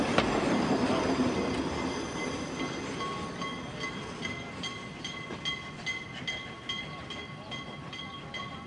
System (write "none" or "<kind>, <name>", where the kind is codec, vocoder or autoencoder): none